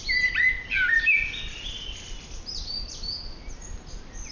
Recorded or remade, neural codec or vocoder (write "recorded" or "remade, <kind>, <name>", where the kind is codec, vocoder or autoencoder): recorded